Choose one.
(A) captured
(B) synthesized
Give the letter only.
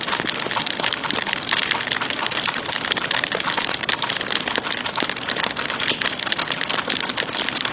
B